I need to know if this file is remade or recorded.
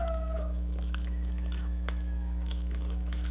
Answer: remade